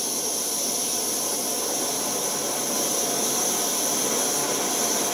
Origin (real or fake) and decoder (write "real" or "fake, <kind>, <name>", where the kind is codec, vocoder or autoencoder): real